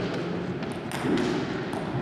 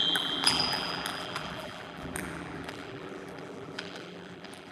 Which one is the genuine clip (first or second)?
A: first